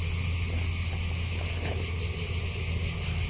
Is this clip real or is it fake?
real